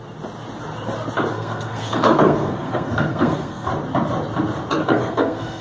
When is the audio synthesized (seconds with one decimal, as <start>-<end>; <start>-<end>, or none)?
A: 1.3-3.7; 4.8-5.6